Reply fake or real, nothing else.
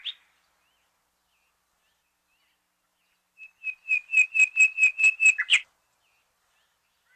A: real